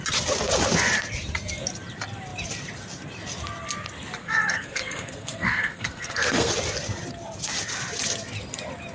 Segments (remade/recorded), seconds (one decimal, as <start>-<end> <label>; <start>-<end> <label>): 0.0-4.2 recorded; 4.2-6.5 remade; 6.5-8.9 recorded